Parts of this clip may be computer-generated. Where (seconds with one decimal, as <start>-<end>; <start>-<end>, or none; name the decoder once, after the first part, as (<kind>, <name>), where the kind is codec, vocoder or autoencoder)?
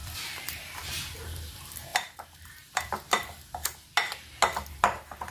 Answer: 0.0-3.9 (vocoder, BigVGAN v2); 4.8-5.3